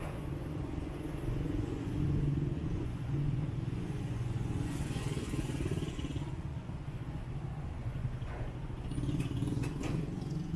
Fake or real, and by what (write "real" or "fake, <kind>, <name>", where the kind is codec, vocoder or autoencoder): fake, vocoder, Vocos